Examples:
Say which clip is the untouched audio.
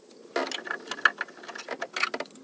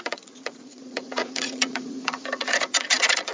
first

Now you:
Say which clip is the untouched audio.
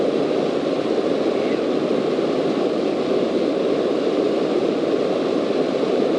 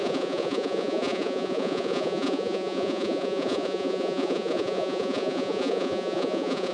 first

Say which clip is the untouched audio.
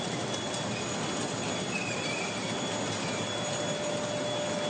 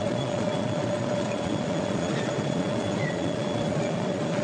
first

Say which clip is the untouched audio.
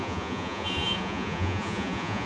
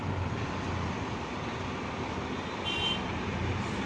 second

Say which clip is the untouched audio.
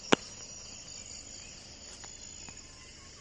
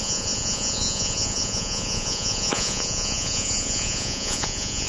first